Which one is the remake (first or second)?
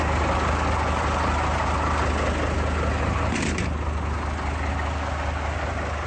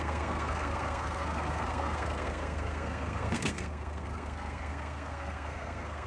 second